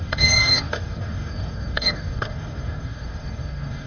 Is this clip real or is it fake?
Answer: fake